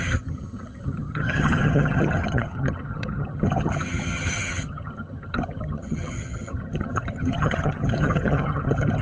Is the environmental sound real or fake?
fake